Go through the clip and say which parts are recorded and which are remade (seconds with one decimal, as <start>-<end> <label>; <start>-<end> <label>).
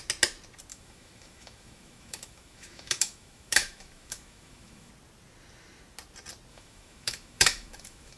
0.0-0.7 recorded; 0.7-4.9 remade; 4.9-6.5 recorded; 6.5-8.2 remade